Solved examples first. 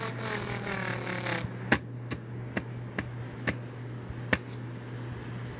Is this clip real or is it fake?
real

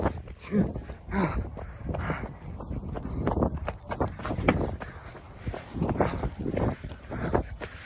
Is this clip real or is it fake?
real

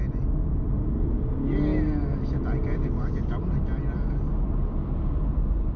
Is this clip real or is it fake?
real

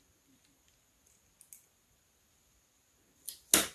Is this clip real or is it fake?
real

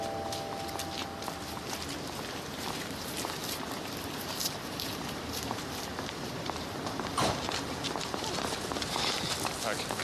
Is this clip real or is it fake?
fake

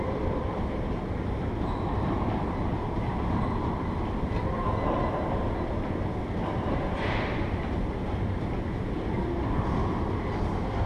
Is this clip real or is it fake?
fake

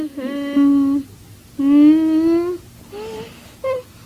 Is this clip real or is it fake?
real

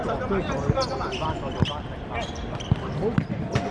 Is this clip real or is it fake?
real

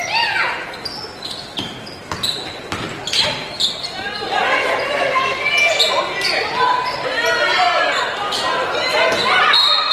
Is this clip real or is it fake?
real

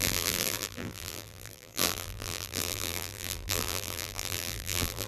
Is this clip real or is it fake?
fake